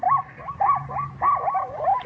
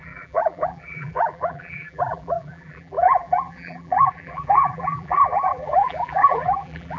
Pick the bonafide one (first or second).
first